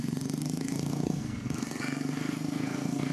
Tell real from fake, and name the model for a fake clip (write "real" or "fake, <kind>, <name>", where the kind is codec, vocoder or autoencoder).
fake, codec, SNAC